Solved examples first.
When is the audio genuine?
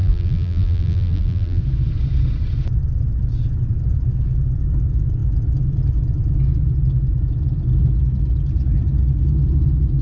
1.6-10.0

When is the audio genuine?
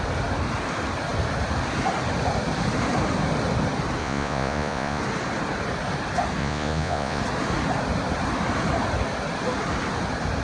0.0-4.0; 5.0-6.4; 7.2-10.4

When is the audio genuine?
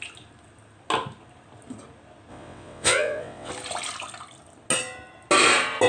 0.0-2.3; 3.5-5.9